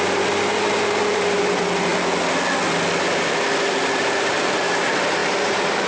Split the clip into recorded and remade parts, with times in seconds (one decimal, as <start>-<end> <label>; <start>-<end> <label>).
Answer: 0.0-1.9 remade; 1.9-4.0 recorded; 4.0-5.9 remade